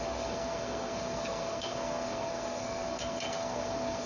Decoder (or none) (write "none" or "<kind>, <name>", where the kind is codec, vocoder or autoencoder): codec, SNAC